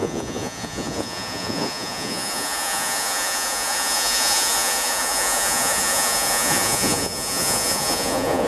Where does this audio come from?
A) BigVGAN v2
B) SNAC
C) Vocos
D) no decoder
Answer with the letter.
C